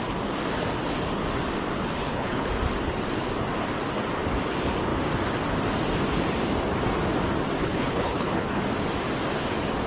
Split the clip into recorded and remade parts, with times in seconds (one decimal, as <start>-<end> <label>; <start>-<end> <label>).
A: 0.0-2.0 recorded; 2.0-2.5 remade; 2.5-7.6 recorded; 7.6-8.6 remade; 8.6-9.9 recorded